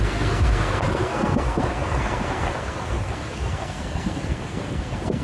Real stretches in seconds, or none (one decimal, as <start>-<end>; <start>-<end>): none